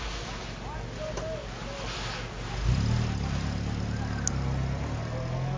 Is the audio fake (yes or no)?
no